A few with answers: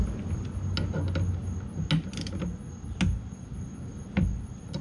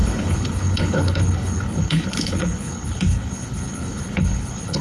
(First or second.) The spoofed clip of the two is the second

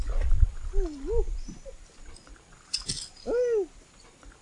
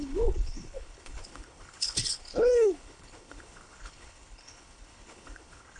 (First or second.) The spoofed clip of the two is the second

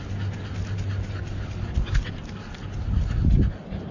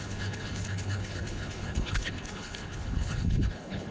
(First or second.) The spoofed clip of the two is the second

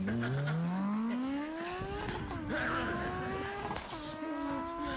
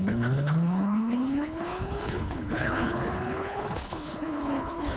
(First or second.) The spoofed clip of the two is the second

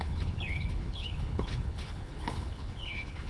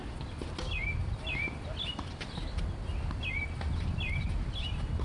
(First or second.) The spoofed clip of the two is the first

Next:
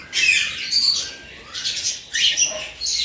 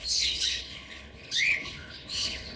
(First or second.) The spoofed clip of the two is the second